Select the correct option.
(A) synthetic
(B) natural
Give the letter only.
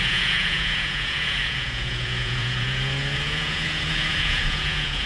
A